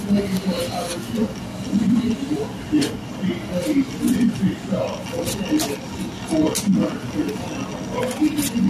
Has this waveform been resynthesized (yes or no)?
no